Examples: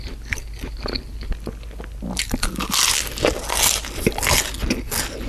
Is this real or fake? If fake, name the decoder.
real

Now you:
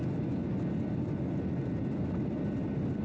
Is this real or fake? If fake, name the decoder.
real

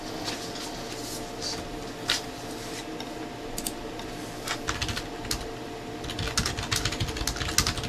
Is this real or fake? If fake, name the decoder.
real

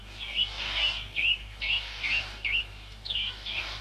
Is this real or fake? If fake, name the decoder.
fake, codec, DAC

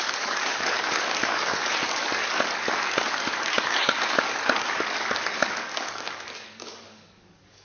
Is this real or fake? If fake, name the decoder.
fake, codec, DAC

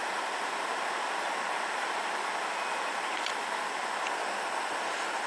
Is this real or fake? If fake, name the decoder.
real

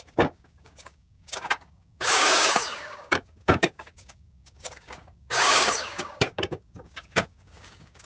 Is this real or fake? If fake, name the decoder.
fake, codec, DAC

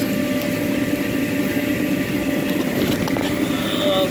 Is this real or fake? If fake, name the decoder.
real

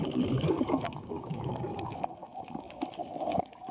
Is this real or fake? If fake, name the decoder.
fake, codec, DAC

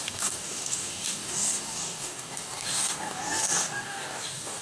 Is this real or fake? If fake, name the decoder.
fake, codec, DAC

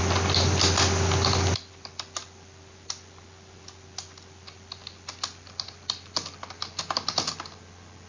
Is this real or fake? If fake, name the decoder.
real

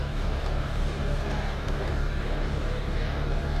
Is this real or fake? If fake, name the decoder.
fake, codec, DAC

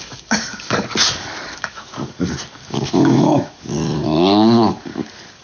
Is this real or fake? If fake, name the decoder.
fake, codec, DAC